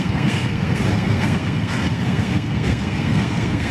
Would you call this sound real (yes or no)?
no